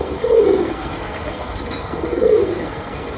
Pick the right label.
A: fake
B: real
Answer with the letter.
A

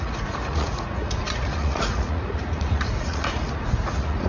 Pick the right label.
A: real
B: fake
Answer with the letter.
B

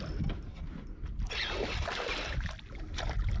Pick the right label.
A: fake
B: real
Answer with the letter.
B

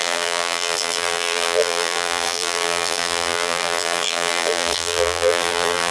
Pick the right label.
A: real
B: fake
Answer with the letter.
B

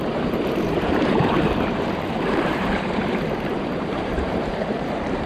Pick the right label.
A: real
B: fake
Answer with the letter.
B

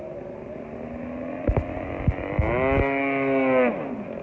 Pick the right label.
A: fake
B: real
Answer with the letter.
B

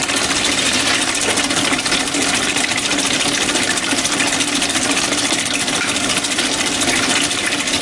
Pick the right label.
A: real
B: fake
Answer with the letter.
A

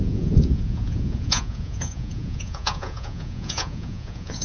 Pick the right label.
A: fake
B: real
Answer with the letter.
A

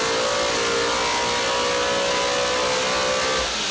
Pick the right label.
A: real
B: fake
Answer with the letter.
A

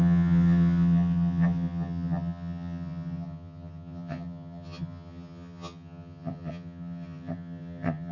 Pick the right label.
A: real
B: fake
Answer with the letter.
B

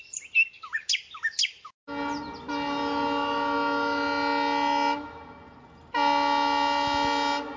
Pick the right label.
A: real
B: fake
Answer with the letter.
A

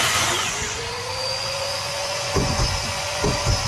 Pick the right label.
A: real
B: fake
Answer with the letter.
B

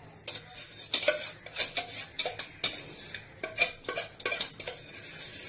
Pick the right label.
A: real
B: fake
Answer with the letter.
A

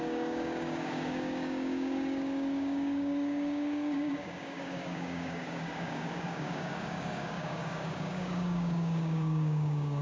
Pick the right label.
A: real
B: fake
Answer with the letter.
B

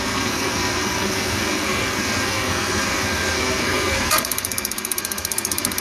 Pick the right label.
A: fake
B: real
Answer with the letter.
A